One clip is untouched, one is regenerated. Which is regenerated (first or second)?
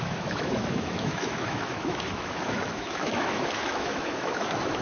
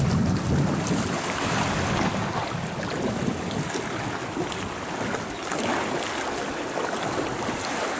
first